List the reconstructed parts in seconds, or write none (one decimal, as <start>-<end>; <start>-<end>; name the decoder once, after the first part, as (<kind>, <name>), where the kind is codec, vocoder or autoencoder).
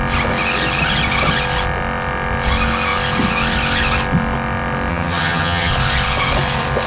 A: 4.9-5.7 (vocoder, HiFi-GAN)